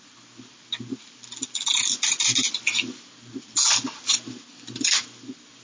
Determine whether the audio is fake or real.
real